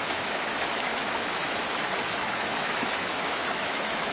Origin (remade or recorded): remade